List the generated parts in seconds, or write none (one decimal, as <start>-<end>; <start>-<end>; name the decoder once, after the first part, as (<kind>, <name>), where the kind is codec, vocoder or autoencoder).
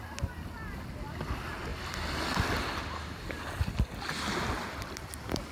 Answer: none